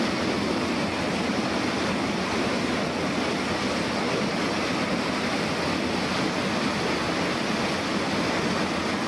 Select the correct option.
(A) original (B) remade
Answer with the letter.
A